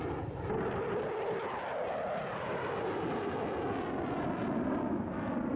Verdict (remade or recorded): recorded